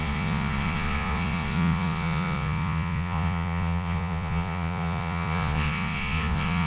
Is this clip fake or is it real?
fake